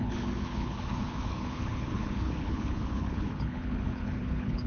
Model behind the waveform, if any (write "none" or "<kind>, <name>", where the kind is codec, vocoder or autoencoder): codec, HILCodec